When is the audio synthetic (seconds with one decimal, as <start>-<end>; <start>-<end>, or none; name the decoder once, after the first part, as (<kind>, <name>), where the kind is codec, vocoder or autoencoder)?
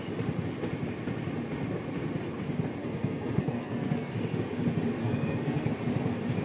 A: 2.8-4.1 (codec, SNAC); 5.0-5.7